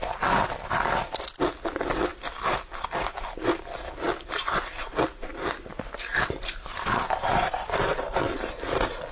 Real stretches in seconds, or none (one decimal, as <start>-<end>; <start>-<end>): 0.0-5.7; 8.5-9.1

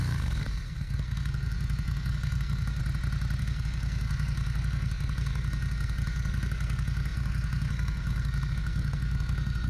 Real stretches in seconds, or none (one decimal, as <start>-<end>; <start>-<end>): 2.8-3.4

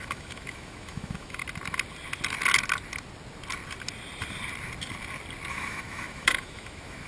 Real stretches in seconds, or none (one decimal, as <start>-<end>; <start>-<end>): 1.4-5.5